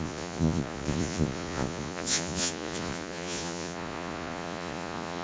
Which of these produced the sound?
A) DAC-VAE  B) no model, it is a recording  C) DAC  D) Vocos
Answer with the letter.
D